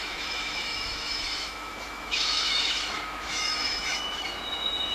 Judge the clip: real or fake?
fake